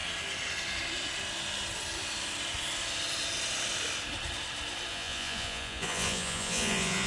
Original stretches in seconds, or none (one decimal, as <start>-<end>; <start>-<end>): 0.0-4.9